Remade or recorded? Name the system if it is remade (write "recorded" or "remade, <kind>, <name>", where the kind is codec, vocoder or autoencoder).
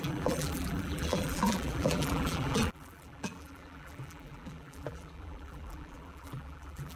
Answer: remade, vocoder, BigVGAN v2